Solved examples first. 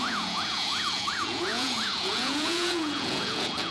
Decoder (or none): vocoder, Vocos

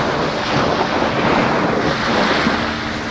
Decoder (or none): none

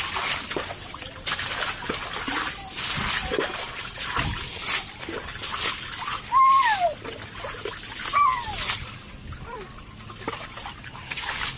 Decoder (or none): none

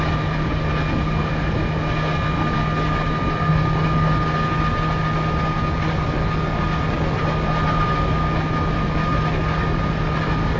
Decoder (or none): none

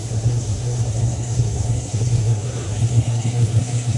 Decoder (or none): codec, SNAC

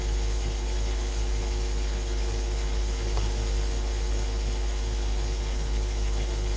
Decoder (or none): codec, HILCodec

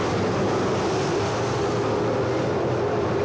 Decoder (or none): none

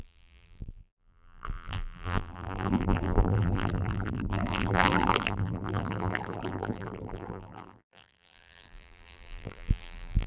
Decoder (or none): vocoder, BigVGAN v2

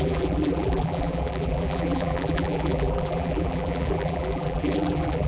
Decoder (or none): vocoder, BigVGAN v2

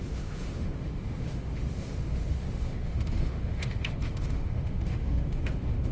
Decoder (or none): autoencoder, DAC-VAE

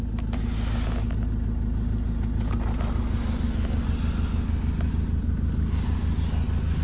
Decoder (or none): none